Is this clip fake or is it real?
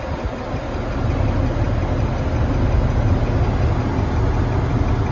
real